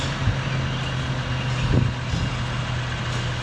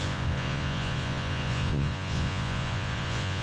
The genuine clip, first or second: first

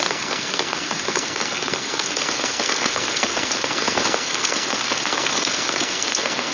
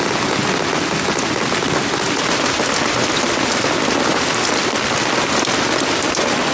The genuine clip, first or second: second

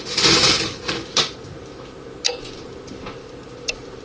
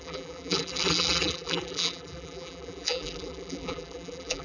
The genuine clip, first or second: first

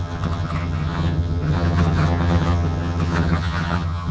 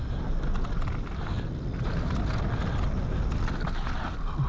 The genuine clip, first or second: second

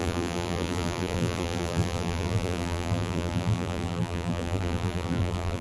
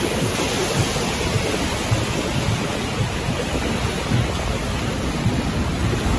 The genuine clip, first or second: second